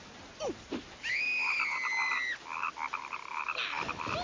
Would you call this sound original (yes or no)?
yes